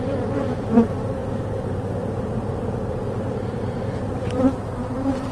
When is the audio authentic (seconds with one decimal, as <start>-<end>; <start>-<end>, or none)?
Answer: none